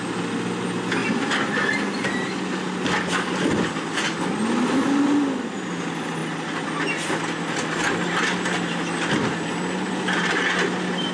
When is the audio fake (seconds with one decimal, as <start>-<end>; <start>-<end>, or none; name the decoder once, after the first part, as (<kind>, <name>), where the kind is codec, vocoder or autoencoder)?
none